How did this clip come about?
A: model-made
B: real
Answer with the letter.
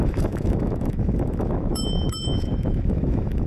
A